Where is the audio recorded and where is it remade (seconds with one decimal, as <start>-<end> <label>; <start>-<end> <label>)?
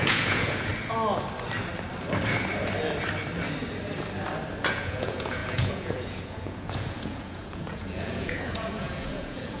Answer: 0.0-0.7 remade; 0.7-4.7 recorded; 4.7-9.6 remade